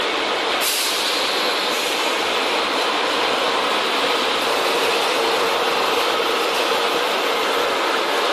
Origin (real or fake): real